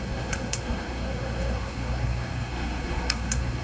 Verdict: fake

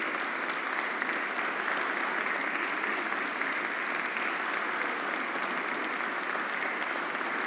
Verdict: real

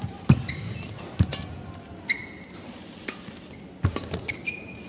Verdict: real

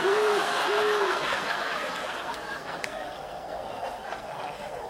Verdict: fake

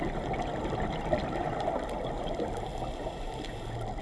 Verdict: real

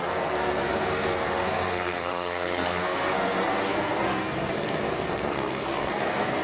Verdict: fake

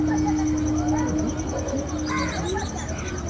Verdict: real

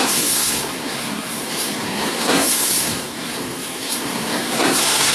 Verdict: fake